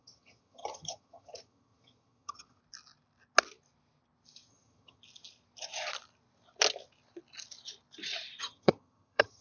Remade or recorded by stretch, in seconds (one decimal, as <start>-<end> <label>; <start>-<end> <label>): 0.0-2.6 remade; 2.6-4.5 recorded; 4.5-5.0 remade; 5.0-8.4 recorded; 8.4-9.4 remade